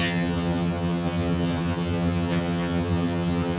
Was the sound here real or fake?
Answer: fake